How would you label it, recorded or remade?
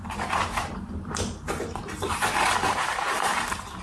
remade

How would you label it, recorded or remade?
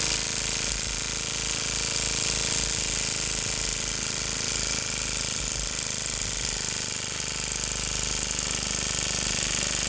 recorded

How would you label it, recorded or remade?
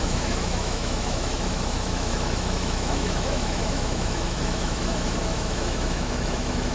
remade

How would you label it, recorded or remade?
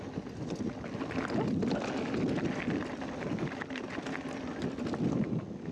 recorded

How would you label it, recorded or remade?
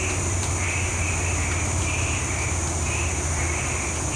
recorded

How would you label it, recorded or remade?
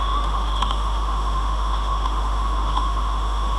remade